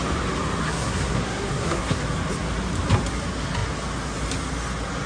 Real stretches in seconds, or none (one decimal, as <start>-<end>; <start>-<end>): 0.0-0.6; 2.0-5.1